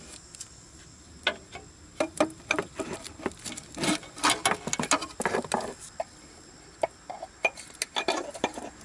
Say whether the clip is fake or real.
real